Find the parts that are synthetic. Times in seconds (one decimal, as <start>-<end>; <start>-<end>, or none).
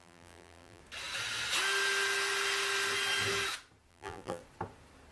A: 0.0-0.8; 3.9-4.4